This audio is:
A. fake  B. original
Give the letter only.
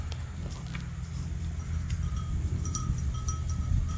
B